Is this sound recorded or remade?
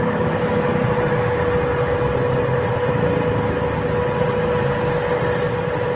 recorded